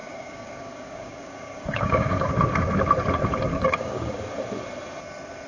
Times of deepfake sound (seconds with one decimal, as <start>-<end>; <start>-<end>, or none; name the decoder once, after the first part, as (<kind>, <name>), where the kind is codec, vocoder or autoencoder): 0.0-2.3 (codec, DAC); 3.5-4.2